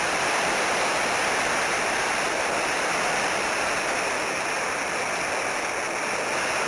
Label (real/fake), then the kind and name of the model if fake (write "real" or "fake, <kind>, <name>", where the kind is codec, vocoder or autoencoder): real